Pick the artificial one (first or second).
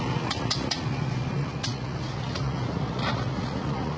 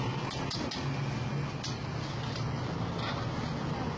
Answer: first